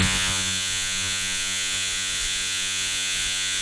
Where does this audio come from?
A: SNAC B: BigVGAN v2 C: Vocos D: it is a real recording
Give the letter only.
C